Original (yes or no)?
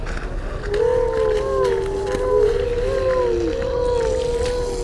yes